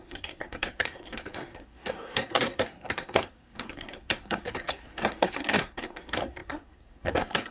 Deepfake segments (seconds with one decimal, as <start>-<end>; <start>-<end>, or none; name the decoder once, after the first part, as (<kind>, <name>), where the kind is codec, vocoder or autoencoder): 0.0-7.5 (codec, SNAC)